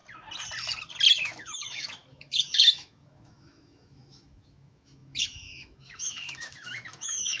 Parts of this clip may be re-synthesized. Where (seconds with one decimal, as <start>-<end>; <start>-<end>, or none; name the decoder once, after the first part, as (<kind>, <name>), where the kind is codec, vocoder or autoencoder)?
1.1-7.4 (autoencoder, DAC-VAE)